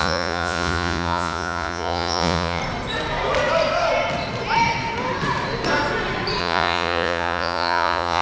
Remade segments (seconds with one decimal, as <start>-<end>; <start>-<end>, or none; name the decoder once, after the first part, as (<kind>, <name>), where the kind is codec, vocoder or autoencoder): 0.0-2.6 (vocoder, Vocos); 6.4-8.2